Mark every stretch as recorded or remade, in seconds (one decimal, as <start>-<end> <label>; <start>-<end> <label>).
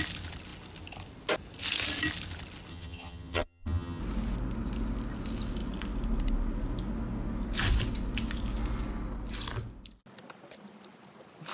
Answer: 0.0-2.7 recorded; 2.7-4.0 remade; 4.0-11.5 recorded